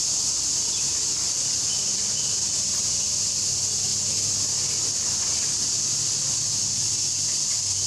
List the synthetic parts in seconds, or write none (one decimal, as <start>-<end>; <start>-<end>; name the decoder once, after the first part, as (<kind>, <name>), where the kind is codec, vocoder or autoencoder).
1.9-3.1 (vocoder, BigVGAN v2)